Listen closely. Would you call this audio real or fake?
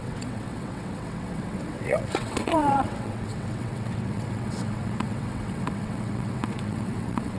fake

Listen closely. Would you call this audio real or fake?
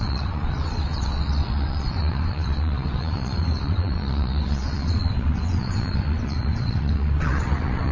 fake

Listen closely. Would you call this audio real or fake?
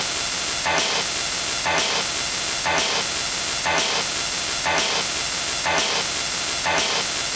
real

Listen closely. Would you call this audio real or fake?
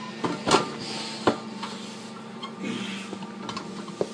real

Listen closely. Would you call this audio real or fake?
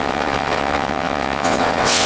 fake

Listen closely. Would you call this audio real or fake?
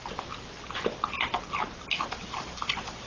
real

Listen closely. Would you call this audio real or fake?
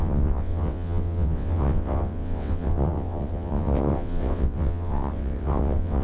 fake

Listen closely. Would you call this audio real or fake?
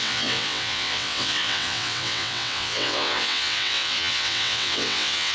fake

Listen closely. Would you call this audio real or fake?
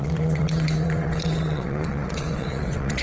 fake